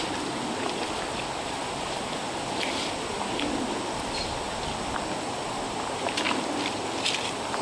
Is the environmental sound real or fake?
real